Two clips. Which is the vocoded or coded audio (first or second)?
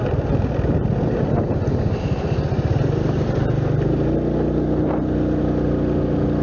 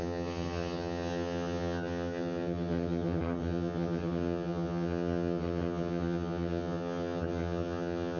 second